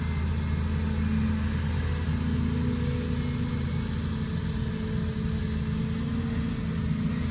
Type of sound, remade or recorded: recorded